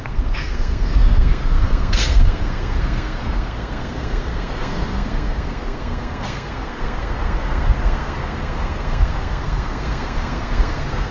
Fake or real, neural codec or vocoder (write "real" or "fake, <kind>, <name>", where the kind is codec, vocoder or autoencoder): fake, codec, SNAC